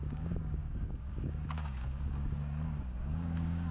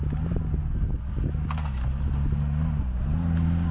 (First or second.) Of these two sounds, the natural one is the second